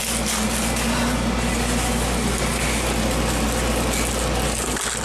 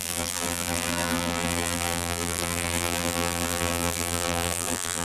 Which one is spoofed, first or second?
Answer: second